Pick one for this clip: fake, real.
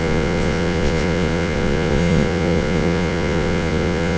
fake